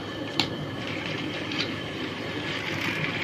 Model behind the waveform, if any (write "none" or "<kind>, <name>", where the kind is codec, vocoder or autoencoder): vocoder, BigVGAN v2